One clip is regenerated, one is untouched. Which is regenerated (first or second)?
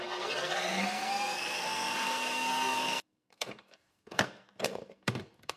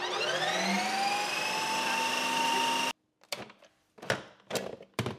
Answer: first